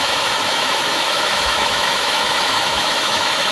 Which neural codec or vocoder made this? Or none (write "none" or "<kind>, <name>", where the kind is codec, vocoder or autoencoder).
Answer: autoencoder, DAC-VAE